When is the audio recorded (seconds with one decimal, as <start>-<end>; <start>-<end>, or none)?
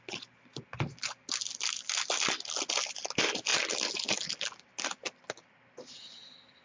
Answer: 0.0-6.6